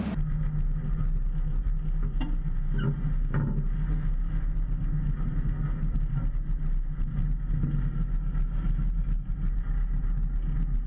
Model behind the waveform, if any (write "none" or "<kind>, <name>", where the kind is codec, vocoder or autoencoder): none